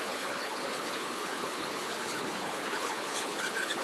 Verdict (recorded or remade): remade